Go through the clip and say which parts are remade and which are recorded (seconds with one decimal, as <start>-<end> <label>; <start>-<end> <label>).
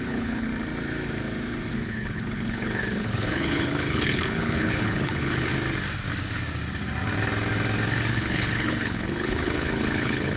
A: 0.0-0.5 remade; 0.5-1.7 recorded; 1.7-5.5 remade; 5.5-8.1 recorded; 8.1-10.4 remade